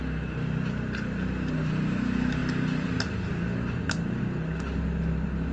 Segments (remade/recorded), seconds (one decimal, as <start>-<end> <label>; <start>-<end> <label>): 0.0-5.5 recorded